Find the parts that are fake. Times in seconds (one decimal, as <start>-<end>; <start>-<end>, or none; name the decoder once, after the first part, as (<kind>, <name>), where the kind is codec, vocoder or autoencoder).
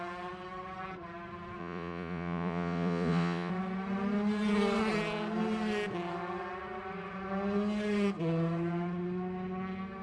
1.6-3.5 (vocoder, Vocos)